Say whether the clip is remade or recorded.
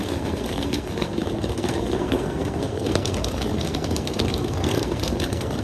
remade